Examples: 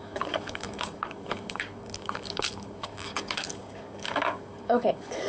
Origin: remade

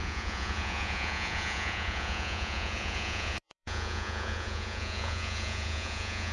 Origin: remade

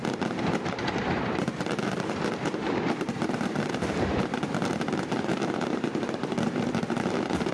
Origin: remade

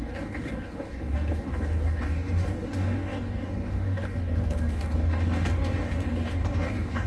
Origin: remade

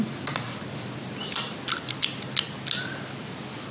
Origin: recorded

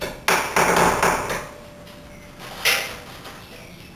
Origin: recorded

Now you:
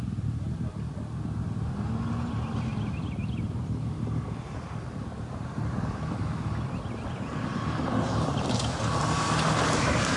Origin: recorded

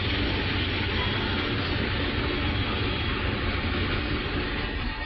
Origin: recorded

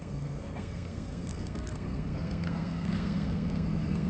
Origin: remade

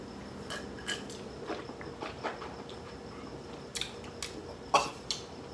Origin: recorded